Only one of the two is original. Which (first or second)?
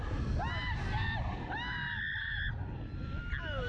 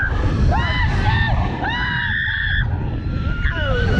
first